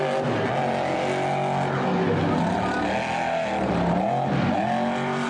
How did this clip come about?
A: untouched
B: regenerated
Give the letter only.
A